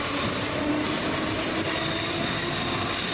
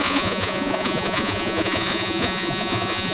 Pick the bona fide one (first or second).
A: first